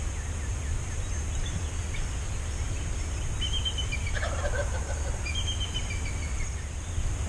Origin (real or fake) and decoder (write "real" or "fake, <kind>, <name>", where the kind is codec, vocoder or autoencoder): real